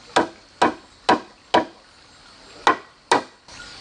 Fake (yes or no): no